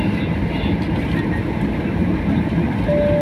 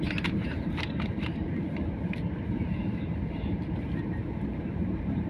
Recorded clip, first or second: first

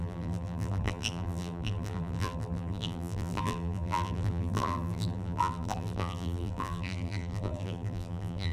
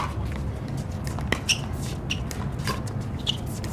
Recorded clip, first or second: second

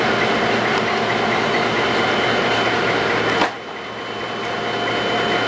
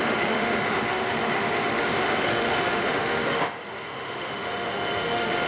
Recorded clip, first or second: first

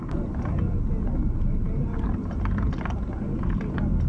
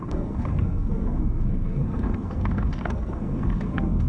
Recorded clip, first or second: first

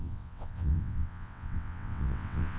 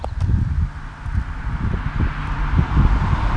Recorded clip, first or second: second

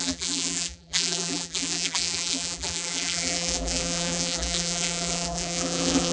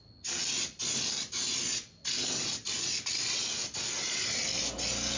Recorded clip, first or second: second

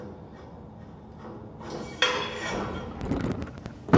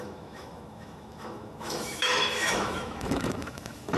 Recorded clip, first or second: first